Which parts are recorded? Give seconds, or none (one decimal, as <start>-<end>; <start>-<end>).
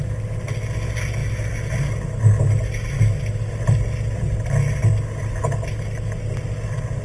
0.0-7.0